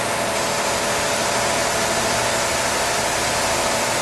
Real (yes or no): yes